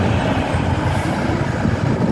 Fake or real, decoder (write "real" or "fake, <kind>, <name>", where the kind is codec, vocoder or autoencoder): fake, vocoder, BigVGAN v2